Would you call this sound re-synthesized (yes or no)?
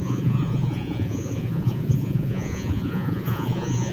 yes